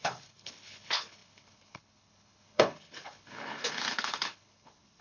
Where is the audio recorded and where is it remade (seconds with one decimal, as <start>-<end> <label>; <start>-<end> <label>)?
0.0-5.0 remade